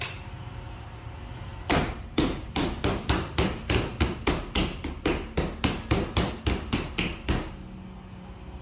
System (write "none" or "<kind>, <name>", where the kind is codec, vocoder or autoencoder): none